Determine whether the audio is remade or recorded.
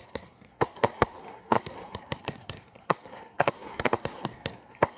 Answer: remade